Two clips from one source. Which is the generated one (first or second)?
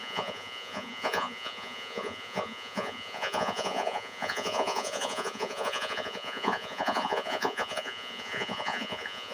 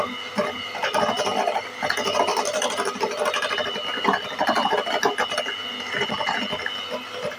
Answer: first